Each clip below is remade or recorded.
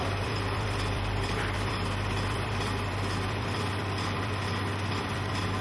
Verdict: remade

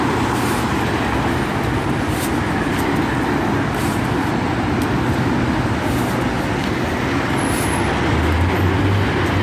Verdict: recorded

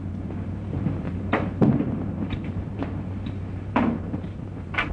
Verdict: remade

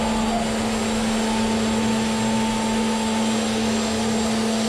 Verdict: recorded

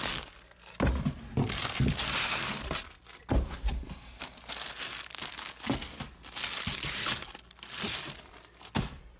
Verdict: recorded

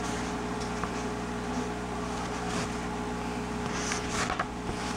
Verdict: recorded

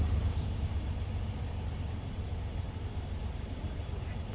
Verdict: remade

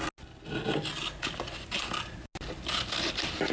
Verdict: recorded